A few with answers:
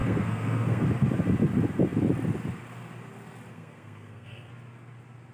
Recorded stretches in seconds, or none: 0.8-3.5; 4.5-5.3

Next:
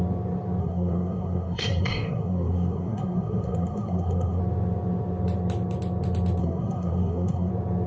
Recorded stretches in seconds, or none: 0.0-0.6; 4.4-6.4; 7.5-7.9

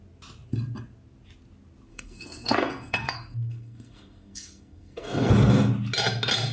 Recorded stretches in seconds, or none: 0.0-1.9; 5.3-6.5